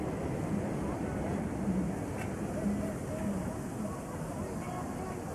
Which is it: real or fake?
real